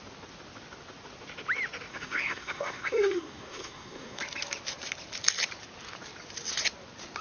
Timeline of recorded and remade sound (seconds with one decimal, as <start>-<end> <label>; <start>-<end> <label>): 0.0-1.9 recorded; 1.9-4.2 remade; 4.2-7.2 recorded